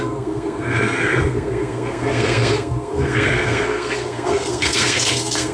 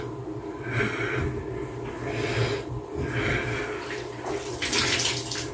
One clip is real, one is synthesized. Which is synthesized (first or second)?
first